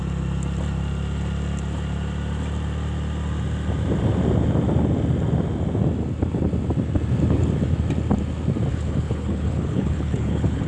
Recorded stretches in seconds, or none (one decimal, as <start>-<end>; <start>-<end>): 0.0-8.7